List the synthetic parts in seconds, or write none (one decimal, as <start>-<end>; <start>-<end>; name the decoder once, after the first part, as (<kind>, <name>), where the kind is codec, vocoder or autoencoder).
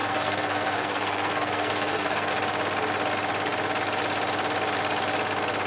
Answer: 0.0-2.3 (codec, SNAC)